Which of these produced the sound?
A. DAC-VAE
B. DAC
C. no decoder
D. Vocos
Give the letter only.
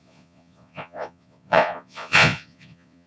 D